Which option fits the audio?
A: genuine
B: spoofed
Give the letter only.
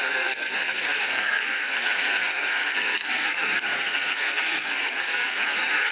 B